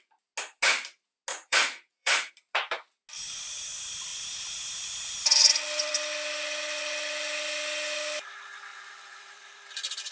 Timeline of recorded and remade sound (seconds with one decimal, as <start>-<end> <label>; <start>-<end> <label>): 0.0-1.3 recorded; 1.3-2.3 remade; 2.3-8.7 recorded; 8.7-9.6 remade; 9.6-10.1 recorded